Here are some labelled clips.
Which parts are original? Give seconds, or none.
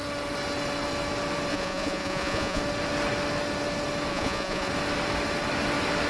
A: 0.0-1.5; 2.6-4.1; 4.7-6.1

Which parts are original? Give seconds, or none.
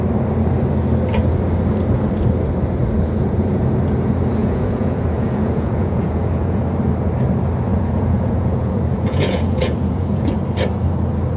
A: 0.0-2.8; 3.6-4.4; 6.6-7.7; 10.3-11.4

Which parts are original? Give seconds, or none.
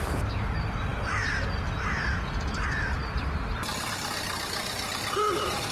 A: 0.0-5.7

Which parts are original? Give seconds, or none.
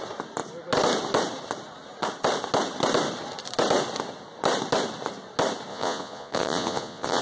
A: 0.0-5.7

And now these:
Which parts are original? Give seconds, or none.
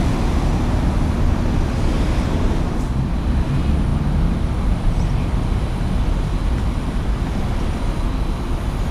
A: 0.0-8.9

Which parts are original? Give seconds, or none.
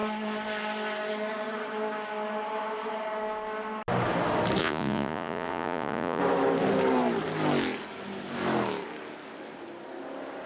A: 0.0-4.6; 6.2-10.5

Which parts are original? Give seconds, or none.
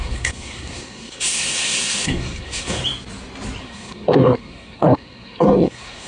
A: 2.8-3.6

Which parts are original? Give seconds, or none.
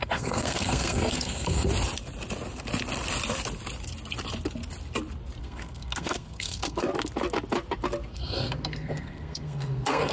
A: 1.7-5.4; 6.9-8.1